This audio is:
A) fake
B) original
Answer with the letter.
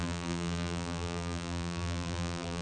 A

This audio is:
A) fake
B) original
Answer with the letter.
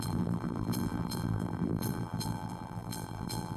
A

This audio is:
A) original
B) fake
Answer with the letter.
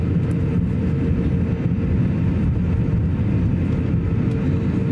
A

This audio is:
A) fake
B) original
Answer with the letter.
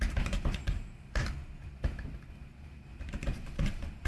A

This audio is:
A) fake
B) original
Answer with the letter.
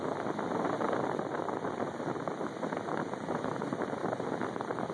B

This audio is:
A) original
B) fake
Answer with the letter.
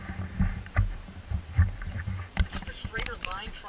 B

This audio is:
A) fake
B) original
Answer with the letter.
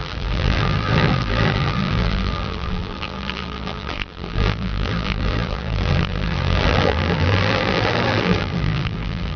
A